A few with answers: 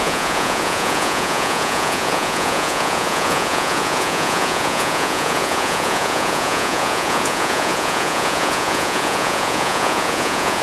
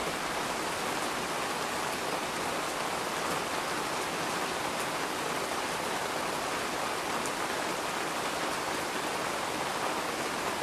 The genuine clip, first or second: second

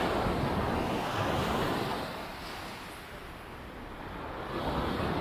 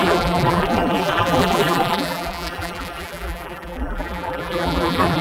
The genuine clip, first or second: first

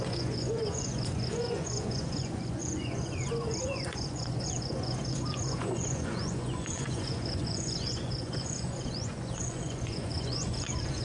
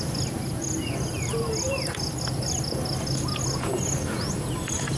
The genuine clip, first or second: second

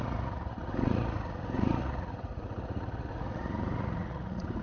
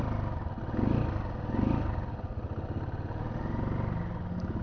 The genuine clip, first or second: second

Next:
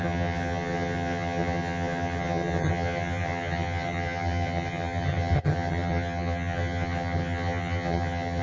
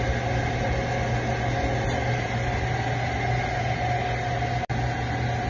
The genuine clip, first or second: second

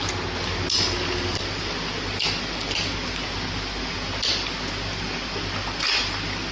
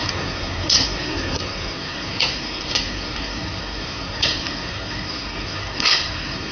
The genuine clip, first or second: first